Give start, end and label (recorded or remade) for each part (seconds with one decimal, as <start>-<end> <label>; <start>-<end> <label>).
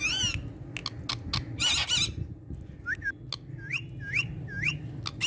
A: 0.0-5.3 recorded